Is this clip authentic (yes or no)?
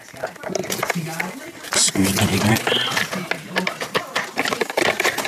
yes